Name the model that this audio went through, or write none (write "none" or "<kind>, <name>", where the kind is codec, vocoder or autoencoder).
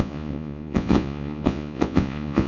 vocoder, Vocos